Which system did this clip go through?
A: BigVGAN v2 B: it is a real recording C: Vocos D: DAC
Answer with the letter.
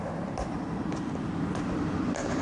B